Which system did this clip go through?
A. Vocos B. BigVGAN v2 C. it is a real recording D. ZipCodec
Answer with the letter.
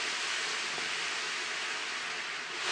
C